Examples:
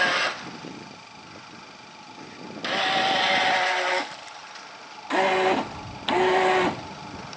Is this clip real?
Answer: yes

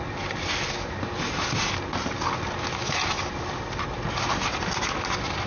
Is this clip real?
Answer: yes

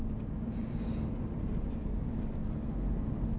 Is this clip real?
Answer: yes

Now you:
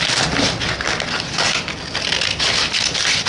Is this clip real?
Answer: yes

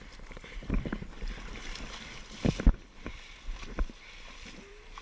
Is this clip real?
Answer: no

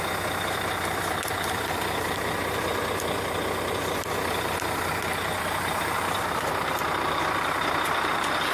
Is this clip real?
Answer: no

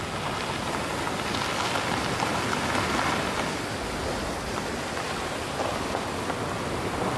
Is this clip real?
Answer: yes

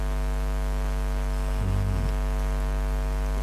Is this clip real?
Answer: yes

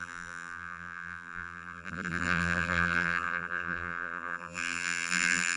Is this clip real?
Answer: no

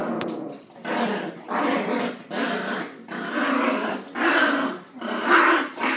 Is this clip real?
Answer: no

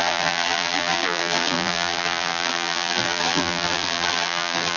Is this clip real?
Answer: no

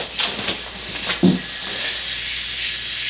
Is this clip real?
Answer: yes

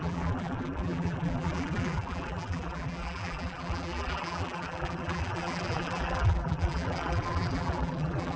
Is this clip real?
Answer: no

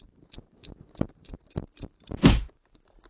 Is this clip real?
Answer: no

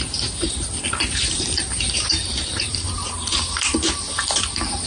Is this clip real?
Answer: no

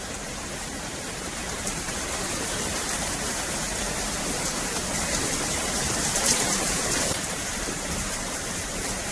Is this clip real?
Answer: no